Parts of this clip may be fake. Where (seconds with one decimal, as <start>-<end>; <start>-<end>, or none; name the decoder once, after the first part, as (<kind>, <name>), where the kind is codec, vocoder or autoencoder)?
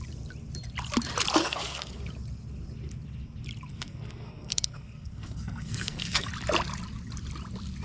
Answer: 1.4-1.9 (codec, SNAC); 3.7-6.3